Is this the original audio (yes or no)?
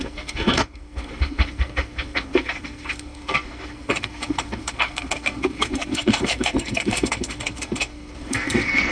no